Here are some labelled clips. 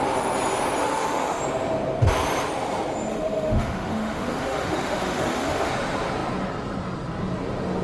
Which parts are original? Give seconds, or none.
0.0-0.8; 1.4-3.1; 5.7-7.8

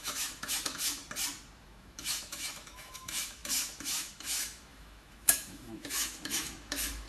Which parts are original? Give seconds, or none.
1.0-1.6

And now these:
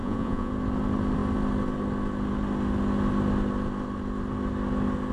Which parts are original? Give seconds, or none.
0.5-5.1

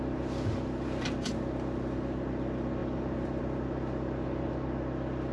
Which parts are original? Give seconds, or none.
0.0-5.3